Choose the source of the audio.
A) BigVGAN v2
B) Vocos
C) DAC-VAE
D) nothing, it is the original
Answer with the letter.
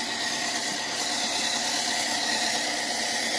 D